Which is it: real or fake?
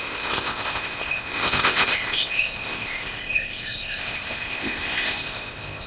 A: fake